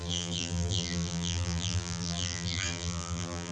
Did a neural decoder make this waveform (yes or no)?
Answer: yes